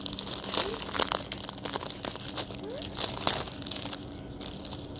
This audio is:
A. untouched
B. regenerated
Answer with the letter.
A